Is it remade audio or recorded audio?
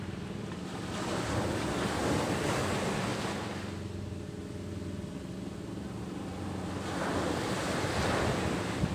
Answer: recorded